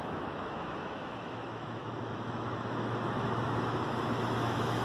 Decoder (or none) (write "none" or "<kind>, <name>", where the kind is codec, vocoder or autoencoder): autoencoder, DAC-VAE